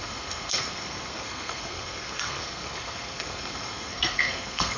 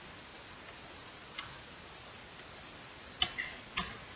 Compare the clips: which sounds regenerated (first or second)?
first